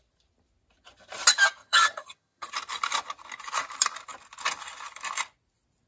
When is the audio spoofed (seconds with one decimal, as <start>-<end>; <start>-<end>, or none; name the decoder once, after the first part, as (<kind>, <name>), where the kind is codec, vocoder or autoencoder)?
1.6-2.5 (vocoder, HiFi-GAN)